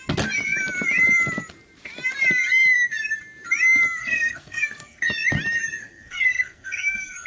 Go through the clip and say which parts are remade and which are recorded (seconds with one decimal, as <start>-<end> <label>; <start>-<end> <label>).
0.0-4.0 recorded; 4.0-5.0 remade; 5.0-5.8 recorded; 5.8-7.3 remade